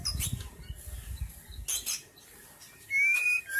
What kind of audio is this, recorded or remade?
recorded